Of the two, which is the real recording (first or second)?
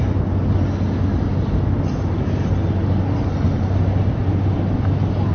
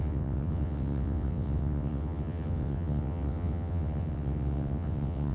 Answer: first